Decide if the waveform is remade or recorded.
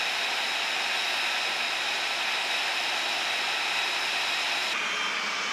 recorded